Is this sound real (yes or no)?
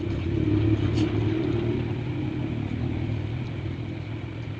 yes